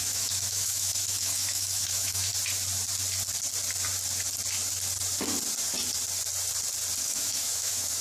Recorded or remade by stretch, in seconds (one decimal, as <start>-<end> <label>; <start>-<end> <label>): 0.0-2.3 remade; 2.3-7.0 recorded; 7.0-8.0 remade